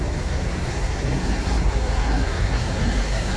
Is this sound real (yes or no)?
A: no